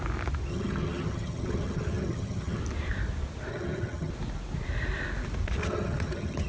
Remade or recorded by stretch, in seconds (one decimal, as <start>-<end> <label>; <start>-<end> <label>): 0.0-0.5 recorded; 0.5-2.6 remade; 2.6-3.5 recorded; 3.5-4.1 remade; 4.1-5.6 recorded; 5.6-6.5 remade

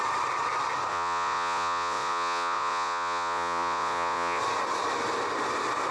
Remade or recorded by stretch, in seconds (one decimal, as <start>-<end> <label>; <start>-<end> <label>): 0.0-0.9 recorded; 0.9-4.4 remade; 4.4-5.9 recorded

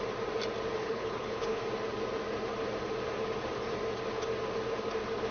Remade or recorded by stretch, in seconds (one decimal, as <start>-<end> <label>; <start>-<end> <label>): 0.0-0.8 recorded; 0.8-1.6 remade; 1.6-5.3 recorded